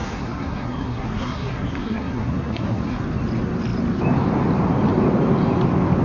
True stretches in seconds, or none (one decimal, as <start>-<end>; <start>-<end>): 3.0-6.0